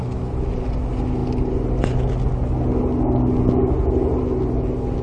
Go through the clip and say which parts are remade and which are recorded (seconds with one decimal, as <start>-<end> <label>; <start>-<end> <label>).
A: 0.0-5.0 recorded